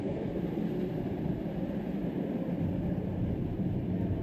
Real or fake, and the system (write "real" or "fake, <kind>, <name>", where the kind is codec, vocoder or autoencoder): real